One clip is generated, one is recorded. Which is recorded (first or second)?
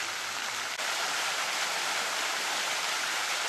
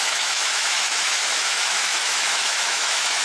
first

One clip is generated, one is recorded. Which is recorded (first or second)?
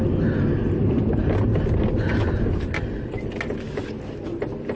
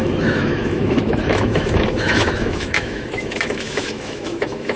first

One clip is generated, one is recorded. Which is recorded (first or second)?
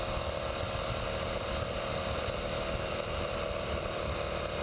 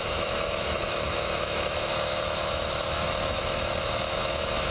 first